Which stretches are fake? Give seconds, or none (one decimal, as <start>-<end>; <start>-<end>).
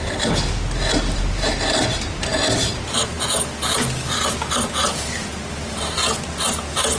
none